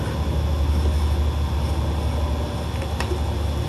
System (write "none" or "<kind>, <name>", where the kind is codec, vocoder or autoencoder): none